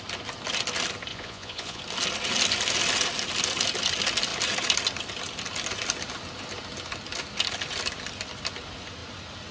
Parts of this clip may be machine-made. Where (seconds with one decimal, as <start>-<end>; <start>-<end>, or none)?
1.1-1.8

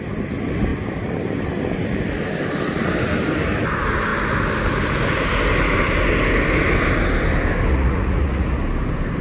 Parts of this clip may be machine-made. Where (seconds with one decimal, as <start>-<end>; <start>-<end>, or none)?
7.7-8.5

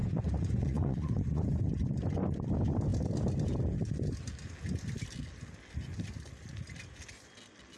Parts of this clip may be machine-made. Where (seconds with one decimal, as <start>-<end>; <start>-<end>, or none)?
0.0-1.5

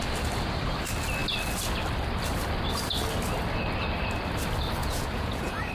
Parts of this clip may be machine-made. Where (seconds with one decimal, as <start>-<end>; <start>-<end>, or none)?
4.8-5.7

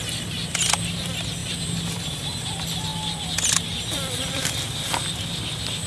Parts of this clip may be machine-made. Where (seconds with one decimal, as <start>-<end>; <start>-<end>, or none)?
none

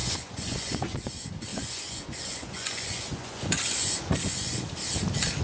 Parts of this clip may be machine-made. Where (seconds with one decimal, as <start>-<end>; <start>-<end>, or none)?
0.0-1.1; 1.5-4.7

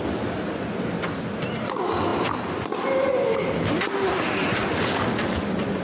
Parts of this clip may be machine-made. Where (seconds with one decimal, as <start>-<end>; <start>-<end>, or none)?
none

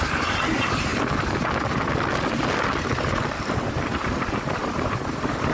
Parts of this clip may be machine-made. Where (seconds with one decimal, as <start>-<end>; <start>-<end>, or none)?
none